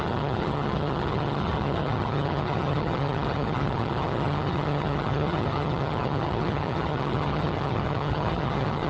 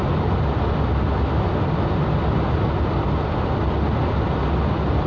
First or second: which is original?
second